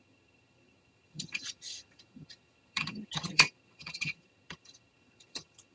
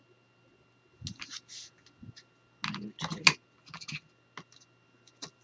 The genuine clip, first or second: second